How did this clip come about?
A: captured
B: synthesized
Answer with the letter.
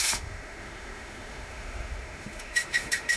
B